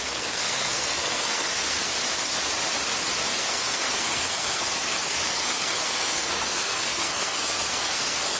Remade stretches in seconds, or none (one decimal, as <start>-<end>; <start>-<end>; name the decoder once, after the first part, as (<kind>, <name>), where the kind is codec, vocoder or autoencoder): 0.0-1.9 (codec, SNAC); 3.3-8.4